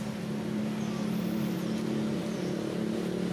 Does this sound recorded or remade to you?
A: recorded